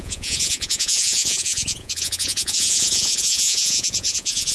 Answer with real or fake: fake